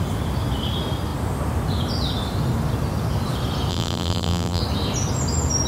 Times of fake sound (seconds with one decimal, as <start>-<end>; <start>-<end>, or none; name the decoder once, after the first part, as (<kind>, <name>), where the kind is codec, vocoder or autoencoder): 3.7-4.6 (vocoder, BigVGAN v2)